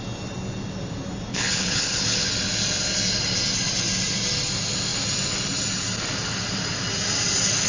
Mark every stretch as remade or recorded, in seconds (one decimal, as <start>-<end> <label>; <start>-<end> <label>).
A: 0.0-1.3 recorded; 1.3-2.3 remade; 2.3-7.7 recorded